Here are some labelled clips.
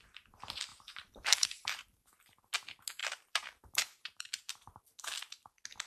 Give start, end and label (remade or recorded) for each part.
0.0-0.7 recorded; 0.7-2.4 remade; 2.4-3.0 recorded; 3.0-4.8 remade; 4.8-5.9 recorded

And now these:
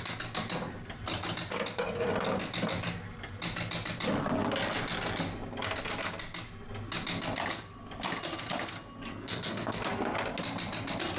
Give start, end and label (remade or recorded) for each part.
0.0-9.1 recorded; 9.1-9.8 remade; 9.8-11.2 recorded

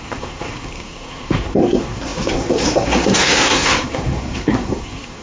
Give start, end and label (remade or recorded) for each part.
0.0-5.2 remade

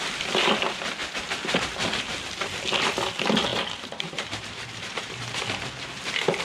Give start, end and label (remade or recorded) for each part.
0.0-3.5 recorded; 3.5-5.2 remade; 5.2-6.4 recorded

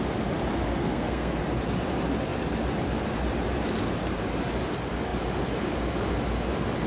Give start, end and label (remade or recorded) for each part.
0.0-0.8 recorded; 0.8-1.4 remade; 1.4-6.9 recorded